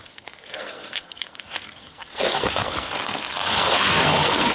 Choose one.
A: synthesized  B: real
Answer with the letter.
A